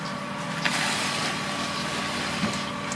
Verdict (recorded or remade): recorded